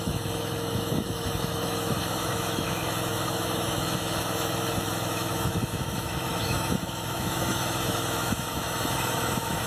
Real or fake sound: fake